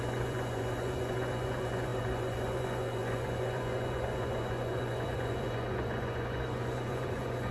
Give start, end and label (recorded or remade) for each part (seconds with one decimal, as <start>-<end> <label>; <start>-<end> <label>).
0.0-7.5 remade